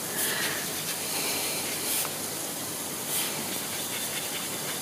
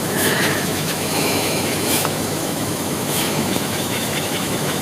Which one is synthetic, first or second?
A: second